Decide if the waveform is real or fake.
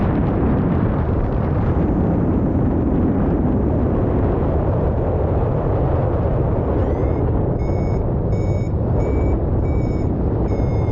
fake